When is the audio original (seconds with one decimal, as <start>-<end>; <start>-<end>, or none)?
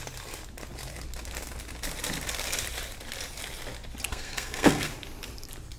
0.0-4.1; 4.9-5.8